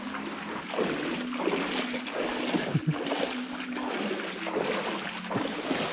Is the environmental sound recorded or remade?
recorded